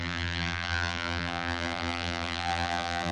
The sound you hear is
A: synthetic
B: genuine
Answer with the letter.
A